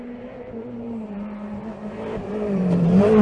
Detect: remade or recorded remade